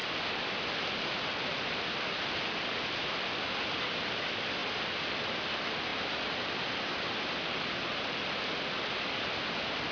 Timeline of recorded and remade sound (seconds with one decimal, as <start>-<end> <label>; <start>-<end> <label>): 0.0-9.9 recorded